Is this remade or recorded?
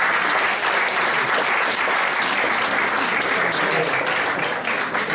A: recorded